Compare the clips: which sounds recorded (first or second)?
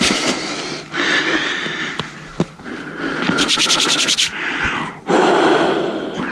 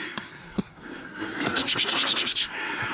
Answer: first